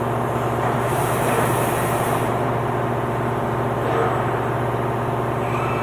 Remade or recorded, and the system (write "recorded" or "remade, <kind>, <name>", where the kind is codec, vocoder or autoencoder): recorded